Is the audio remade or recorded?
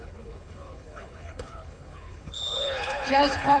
remade